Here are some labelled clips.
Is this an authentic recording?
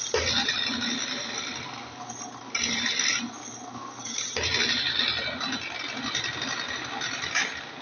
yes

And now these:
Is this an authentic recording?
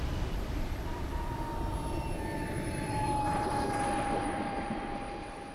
no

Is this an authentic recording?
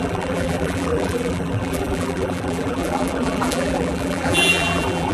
no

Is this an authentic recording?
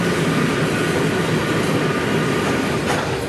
yes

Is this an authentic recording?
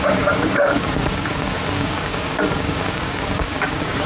no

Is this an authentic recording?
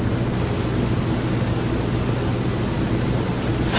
yes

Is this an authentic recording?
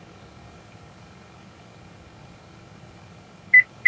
no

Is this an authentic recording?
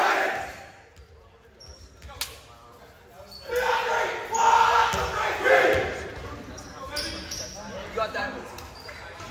yes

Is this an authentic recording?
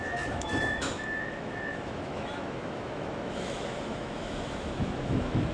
no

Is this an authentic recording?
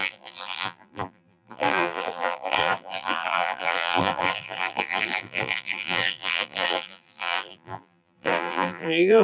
no